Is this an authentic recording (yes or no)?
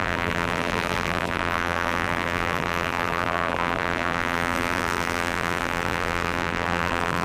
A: no